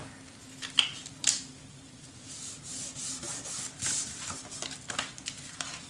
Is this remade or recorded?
remade